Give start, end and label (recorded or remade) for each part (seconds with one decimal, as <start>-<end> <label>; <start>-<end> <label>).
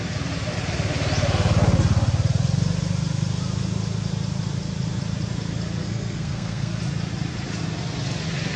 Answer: 0.0-5.8 recorded; 5.8-6.8 remade; 6.8-8.6 recorded